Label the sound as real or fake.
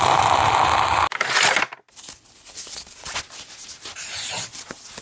real